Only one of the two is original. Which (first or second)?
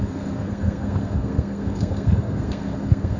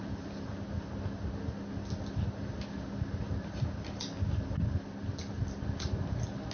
second